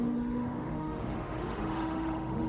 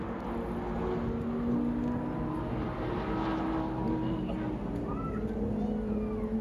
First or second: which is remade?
first